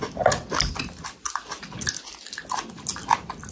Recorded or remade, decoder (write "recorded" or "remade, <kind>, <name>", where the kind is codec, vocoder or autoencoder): recorded